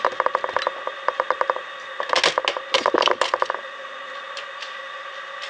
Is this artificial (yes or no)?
no